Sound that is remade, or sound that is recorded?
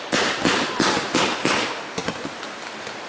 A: recorded